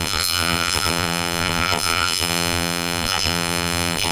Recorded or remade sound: remade